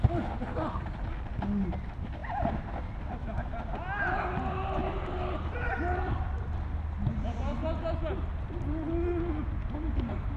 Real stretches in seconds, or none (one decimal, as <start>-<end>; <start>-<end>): 0.0-4.8; 6.6-10.4